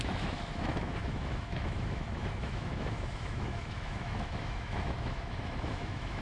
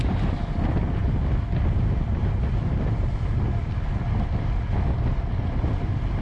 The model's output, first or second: first